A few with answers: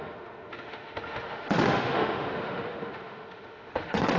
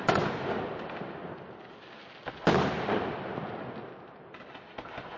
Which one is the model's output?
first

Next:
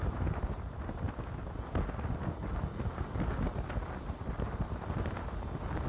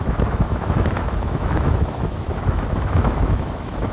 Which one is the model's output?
second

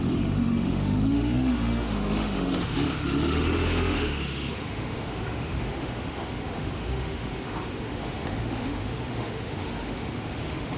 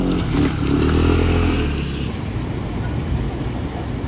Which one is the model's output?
first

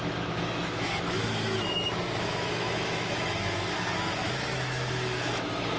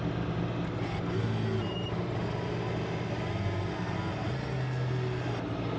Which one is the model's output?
first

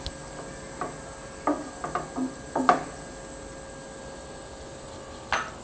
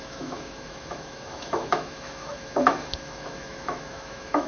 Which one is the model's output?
second